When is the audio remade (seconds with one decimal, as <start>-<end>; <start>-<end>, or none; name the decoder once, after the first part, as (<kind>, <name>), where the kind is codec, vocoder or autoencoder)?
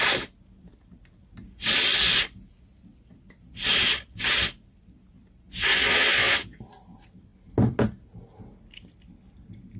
5.7-6.6 (vocoder, Vocos)